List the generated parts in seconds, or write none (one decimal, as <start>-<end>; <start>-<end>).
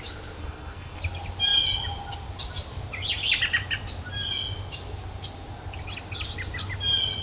0.4-1.0